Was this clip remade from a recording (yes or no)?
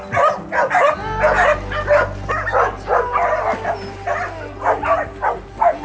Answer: no